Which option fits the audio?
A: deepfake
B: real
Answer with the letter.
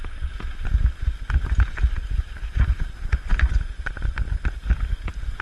B